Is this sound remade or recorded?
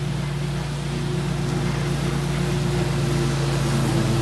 recorded